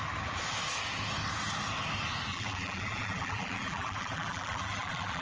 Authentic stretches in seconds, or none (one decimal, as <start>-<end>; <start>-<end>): 0.0-2.3